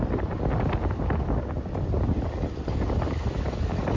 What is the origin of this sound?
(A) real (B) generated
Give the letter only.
A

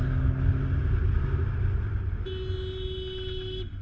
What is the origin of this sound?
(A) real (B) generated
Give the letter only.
A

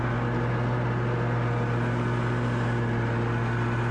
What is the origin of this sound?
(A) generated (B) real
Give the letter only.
B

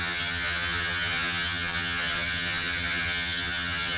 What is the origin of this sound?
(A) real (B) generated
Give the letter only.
B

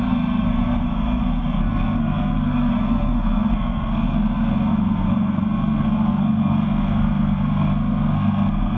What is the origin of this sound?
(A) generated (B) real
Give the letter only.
A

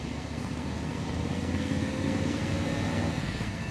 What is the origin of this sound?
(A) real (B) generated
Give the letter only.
B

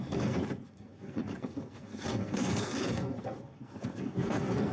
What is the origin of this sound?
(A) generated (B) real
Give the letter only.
A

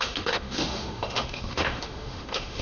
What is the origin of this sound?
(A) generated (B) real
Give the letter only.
A